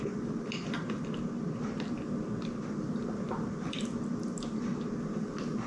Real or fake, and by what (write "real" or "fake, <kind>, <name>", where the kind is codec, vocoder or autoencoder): real